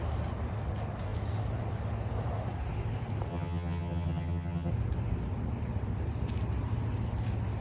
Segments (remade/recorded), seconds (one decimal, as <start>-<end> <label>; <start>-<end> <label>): 0.0-3.3 recorded; 3.3-4.7 remade; 4.7-7.6 recorded